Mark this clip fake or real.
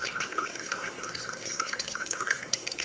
fake